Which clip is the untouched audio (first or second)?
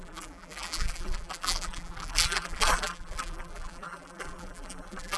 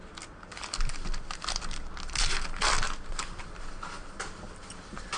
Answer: second